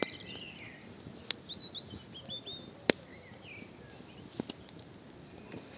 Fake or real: real